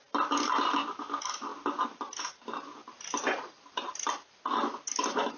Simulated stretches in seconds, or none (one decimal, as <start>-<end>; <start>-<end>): none